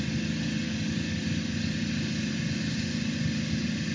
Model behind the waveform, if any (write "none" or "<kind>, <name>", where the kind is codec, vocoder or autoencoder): none